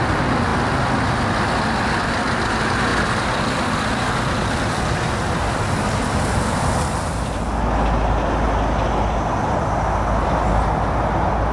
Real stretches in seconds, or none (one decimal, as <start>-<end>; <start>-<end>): 0.0-11.5